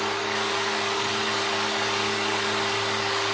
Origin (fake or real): fake